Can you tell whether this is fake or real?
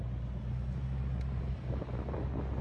real